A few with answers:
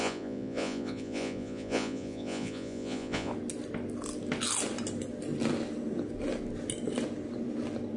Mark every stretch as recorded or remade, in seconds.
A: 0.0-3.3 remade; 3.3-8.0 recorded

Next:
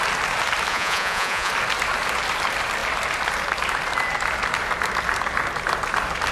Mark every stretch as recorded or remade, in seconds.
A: 0.0-0.7 recorded; 0.7-1.5 remade; 1.5-6.3 recorded

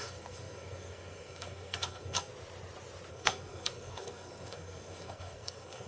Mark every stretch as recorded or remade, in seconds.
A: 0.0-2.3 remade; 2.3-3.1 recorded; 3.1-5.9 remade